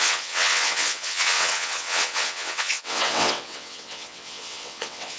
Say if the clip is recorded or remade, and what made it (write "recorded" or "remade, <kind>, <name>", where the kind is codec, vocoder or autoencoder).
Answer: remade, vocoder, WaveNeXt